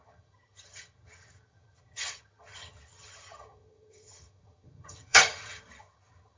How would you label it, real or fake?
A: fake